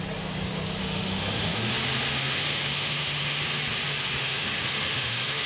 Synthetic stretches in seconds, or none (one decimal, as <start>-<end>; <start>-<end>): 0.8-1.7; 2.1-3.6; 4.2-5.5